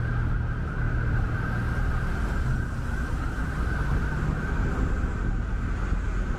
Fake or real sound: real